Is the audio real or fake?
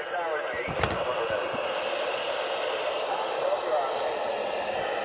real